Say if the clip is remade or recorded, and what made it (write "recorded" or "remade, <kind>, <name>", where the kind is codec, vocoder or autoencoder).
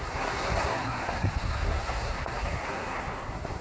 remade, codec, SNAC